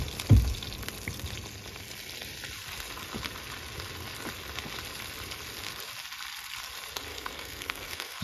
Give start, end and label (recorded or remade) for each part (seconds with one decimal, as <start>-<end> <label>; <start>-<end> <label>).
0.0-7.1 recorded; 7.1-8.2 remade

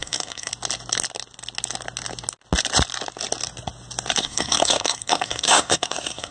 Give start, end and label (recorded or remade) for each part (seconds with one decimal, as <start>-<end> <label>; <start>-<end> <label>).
0.0-0.5 remade; 0.5-4.2 recorded; 4.2-6.3 remade